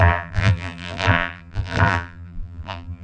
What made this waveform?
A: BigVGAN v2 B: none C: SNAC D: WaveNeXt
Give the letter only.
A